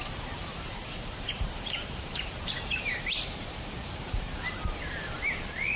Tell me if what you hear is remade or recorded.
remade